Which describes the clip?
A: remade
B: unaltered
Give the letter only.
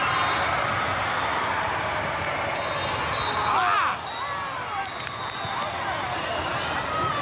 B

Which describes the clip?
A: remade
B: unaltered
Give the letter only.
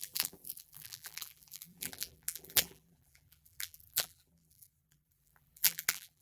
A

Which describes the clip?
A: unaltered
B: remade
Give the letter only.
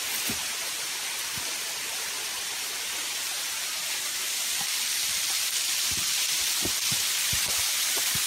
A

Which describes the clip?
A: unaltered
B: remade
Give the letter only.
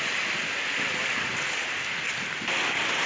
A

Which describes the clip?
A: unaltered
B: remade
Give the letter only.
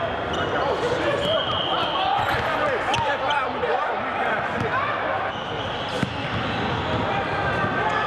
A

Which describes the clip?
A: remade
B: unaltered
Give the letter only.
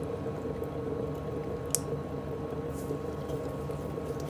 B